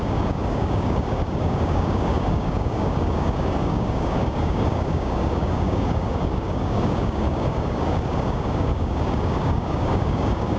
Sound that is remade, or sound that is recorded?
remade